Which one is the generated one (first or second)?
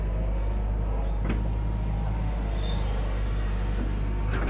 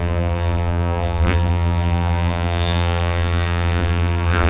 second